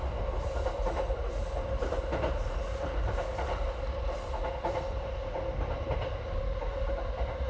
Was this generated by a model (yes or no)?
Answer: no